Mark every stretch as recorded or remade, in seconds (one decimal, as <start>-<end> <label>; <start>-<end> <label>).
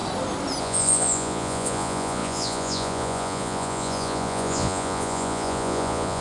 0.0-0.6 recorded; 0.6-6.2 remade